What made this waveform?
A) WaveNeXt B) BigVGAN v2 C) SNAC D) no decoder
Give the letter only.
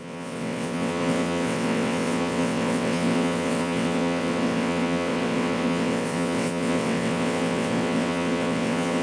A